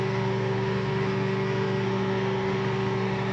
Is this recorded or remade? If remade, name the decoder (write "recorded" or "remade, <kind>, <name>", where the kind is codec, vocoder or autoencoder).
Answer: remade, codec, SNAC